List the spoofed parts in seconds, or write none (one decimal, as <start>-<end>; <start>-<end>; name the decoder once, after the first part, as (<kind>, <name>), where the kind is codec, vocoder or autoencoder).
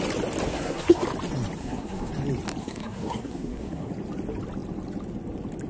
0.5-1.0 (codec, SNAC); 1.6-2.1; 2.6-3.9